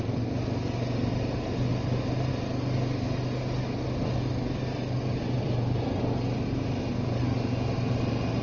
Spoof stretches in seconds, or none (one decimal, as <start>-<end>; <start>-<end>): none